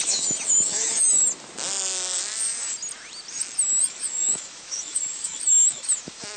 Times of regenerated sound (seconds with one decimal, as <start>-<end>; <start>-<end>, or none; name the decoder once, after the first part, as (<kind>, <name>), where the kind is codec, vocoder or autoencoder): 0.0-1.2 (autoencoder, DAC-VAE); 3.8-6.4